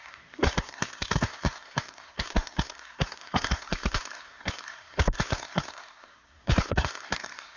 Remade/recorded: remade